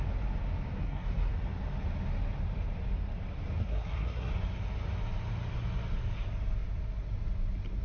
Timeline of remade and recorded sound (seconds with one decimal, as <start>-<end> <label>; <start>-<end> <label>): 0.0-0.8 recorded; 0.8-1.3 remade; 1.3-3.6 recorded; 3.6-4.3 remade; 4.3-7.8 recorded